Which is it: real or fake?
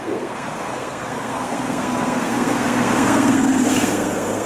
fake